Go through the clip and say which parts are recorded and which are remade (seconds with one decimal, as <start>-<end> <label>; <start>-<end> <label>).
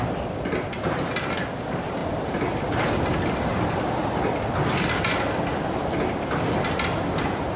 0.0-7.6 recorded